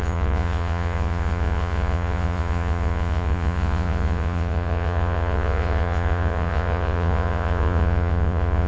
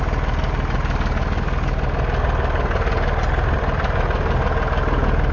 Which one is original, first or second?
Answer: second